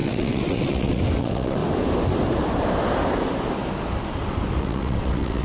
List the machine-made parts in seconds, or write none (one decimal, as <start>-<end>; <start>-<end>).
0.0-1.6; 4.6-5.4